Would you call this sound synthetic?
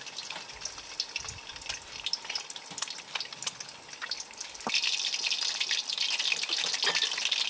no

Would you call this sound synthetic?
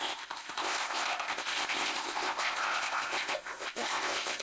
yes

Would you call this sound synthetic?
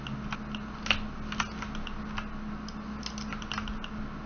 no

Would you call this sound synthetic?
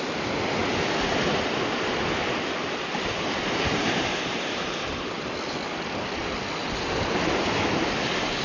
no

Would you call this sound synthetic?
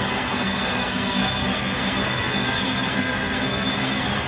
yes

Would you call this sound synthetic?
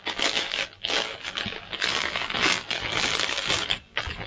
yes